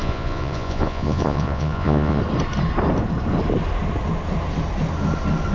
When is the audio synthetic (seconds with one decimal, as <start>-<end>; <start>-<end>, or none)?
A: 0.0-2.2